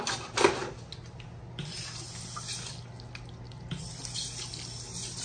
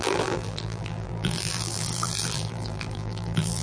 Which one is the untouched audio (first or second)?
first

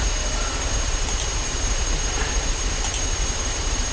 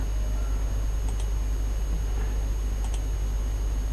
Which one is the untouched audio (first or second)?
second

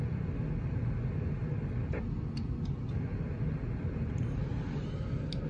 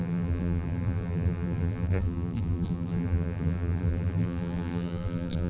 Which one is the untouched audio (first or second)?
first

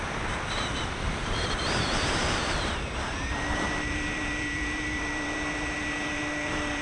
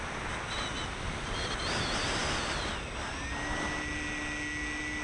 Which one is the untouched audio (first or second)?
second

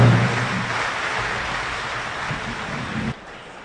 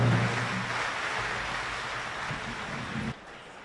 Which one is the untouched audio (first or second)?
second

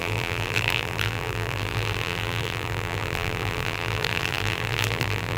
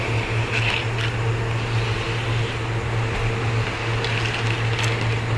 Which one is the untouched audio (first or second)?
second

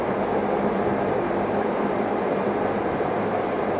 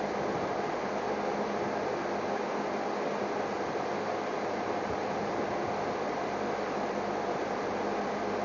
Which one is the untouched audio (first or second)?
second